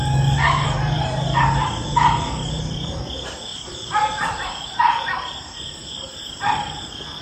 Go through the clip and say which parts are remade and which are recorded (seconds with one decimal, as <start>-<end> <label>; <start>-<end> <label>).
0.0-3.5 recorded; 3.5-6.3 remade; 6.3-7.2 recorded